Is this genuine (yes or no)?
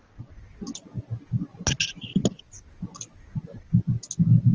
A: yes